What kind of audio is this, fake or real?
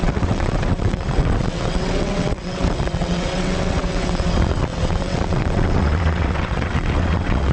fake